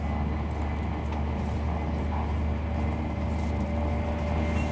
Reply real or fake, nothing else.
real